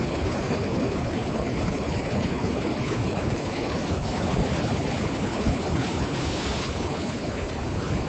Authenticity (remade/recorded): remade